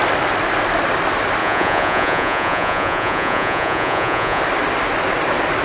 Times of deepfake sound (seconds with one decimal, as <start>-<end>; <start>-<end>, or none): 1.4-4.4